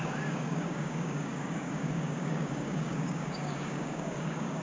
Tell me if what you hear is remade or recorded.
remade